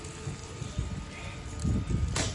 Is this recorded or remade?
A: recorded